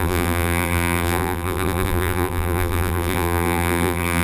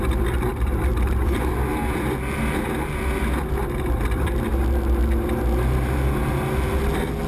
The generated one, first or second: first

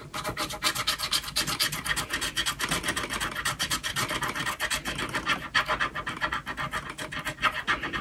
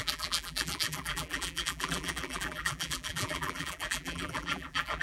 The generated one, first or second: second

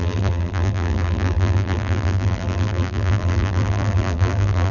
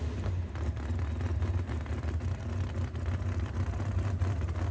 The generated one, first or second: first